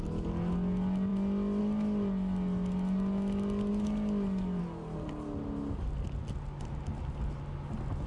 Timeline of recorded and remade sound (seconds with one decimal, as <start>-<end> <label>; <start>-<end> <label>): 0.0-8.1 recorded